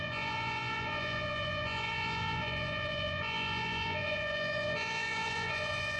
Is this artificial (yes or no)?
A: yes